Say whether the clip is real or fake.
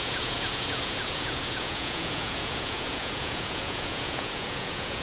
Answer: fake